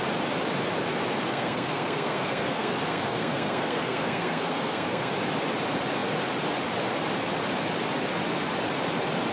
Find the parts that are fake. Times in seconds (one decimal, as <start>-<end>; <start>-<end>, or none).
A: 1.3-5.1